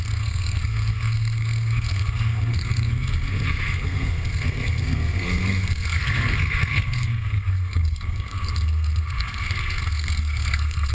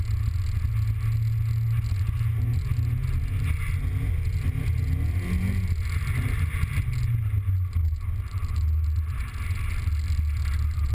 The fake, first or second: first